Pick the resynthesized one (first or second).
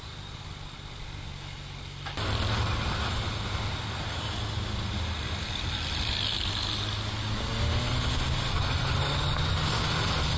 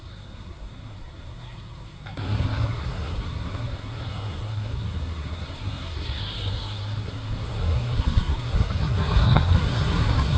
second